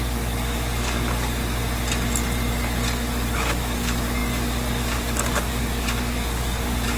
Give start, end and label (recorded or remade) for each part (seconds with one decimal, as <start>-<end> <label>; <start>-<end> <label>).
0.0-1.4 remade; 1.4-2.5 recorded; 2.5-7.0 remade